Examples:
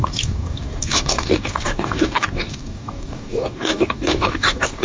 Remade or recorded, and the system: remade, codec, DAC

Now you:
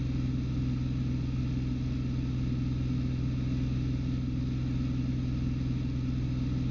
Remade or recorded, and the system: recorded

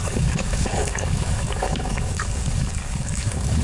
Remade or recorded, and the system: remade, codec, DAC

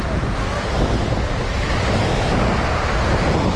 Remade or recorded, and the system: recorded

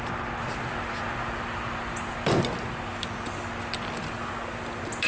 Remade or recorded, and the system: recorded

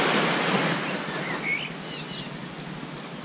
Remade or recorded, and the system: recorded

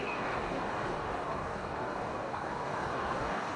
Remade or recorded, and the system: remade, codec, DAC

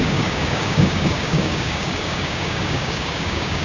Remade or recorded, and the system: remade, codec, DAC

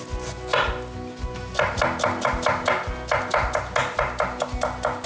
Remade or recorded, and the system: recorded